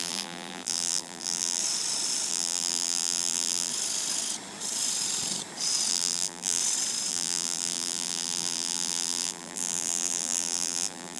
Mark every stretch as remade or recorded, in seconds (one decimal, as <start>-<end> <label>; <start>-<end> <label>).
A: 0.0-1.6 remade; 1.6-2.3 recorded; 2.3-3.7 remade; 3.7-5.9 recorded; 5.9-6.6 remade; 6.6-7.1 recorded; 7.1-11.2 remade